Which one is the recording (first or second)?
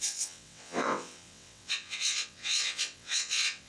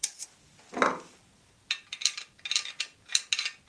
second